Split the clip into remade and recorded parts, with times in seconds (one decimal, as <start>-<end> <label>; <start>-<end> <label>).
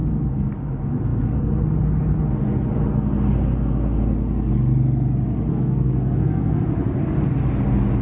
0.0-5.5 recorded; 5.5-6.6 remade; 6.6-8.0 recorded